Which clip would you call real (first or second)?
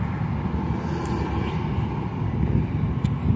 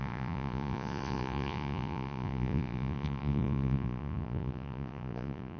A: first